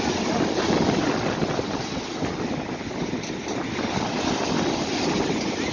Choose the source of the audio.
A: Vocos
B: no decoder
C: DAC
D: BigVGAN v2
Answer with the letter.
B